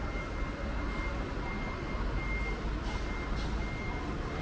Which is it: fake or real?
real